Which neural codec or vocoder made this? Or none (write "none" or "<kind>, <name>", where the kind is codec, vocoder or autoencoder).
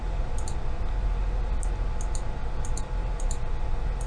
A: none